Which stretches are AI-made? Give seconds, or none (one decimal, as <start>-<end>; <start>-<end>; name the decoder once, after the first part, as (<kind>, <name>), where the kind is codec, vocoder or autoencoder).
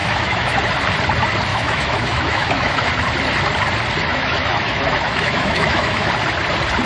0.0-0.6 (autoencoder, DAC-VAE); 1.5-2.9; 4.1-6.1